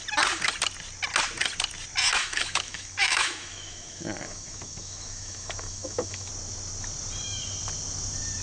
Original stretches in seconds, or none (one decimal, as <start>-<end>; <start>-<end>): 0.0-2.1; 6.3-8.4